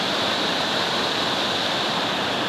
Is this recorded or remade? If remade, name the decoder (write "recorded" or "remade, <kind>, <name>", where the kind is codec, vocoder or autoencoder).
recorded